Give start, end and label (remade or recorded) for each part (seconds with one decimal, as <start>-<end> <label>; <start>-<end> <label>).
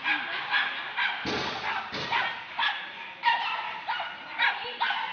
0.0-5.1 recorded